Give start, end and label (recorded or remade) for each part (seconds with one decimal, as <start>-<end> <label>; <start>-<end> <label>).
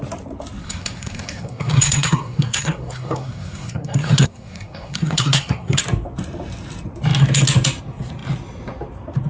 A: 0.0-0.6 recorded; 0.6-5.8 remade; 5.8-9.3 recorded